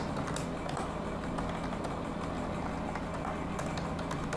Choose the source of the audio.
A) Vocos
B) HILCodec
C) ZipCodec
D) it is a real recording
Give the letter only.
D